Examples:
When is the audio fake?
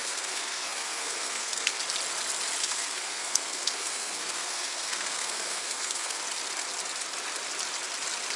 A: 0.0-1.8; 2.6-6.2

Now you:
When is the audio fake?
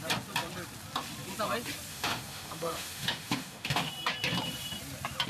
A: 1.9-3.9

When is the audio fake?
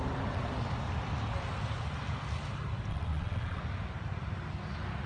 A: 2.9-3.6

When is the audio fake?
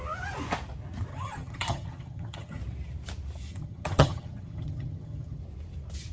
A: 1.1-2.6; 3.5-5.4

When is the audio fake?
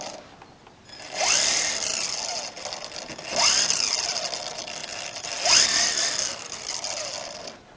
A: none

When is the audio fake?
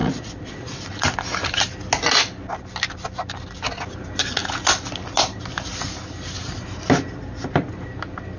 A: 0.0-1.0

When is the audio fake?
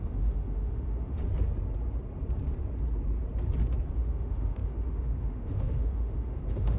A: 0.0-1.2; 3.9-6.8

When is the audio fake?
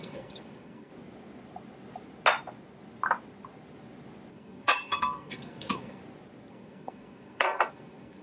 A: 0.0-0.9; 4.3-6.0; 6.5-8.2